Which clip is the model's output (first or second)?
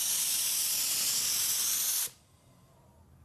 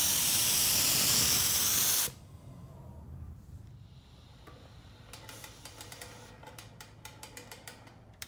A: second